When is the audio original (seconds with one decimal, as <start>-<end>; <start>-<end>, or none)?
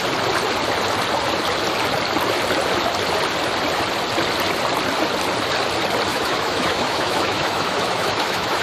0.0-6.1